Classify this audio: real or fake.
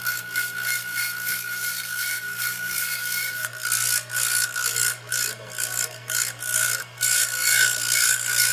fake